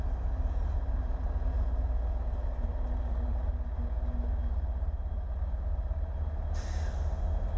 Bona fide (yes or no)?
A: yes